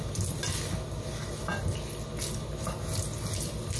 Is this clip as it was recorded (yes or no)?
yes